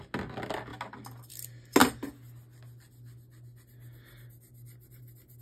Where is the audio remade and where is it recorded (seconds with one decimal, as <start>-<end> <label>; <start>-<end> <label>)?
0.0-5.4 recorded